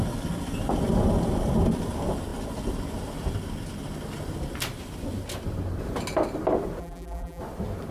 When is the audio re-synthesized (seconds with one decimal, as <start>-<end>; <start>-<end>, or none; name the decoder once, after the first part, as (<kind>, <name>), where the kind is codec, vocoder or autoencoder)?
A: 6.8-7.4 (vocoder, BigVGAN v2)